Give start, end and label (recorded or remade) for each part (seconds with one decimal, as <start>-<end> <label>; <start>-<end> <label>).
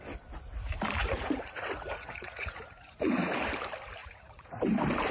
0.0-1.0 recorded; 1.0-3.3 remade; 3.3-4.0 recorded; 4.0-4.6 remade; 4.6-5.1 recorded